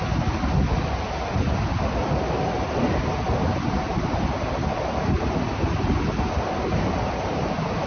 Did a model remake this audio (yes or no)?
no